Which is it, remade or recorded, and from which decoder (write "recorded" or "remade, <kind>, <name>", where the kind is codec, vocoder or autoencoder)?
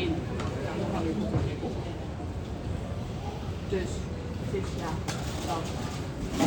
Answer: remade, vocoder, BigVGAN v2